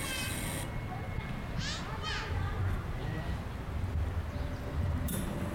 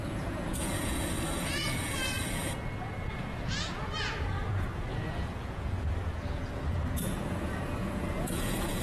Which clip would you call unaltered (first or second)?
first